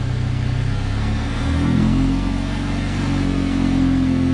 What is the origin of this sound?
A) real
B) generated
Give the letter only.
B